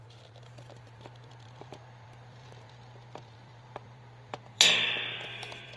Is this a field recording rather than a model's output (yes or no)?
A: no